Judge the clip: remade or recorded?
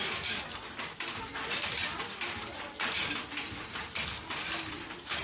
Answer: recorded